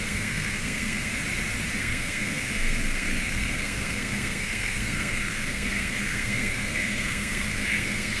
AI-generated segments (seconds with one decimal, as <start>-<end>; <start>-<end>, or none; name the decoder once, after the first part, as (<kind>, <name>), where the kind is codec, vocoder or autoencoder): 0.0-1.1 (codec, SNAC); 1.8-8.2

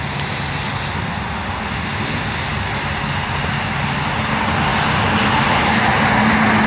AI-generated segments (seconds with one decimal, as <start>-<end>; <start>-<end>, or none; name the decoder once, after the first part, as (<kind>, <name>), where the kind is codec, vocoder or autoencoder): none

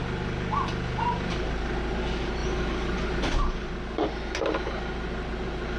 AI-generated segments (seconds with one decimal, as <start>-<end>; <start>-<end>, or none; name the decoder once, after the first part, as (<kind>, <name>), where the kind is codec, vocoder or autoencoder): none

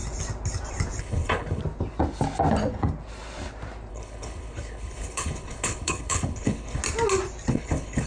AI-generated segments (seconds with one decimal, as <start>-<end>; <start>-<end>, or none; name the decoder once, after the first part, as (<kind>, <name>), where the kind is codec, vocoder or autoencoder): 1.0-1.6 (codec, HILCodec); 3.9-6.8; 7.5-8.1

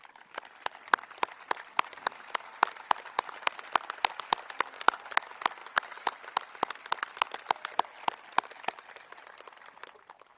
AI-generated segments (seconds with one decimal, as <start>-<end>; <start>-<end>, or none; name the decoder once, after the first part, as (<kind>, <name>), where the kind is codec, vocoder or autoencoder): none

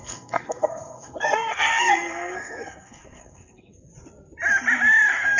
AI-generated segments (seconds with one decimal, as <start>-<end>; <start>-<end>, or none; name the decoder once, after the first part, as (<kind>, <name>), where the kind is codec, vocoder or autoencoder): 0.0-3.9 (codec, SNAC)

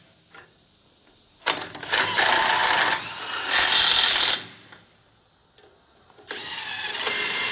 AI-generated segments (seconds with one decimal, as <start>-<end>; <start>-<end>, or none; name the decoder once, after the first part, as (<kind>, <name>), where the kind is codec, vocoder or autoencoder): none

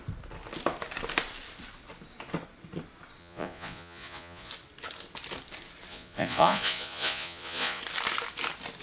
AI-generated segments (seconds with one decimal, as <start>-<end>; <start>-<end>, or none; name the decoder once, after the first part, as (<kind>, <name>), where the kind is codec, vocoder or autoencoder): 3.2-4.5 (vocoder, Vocos); 5.9-7.8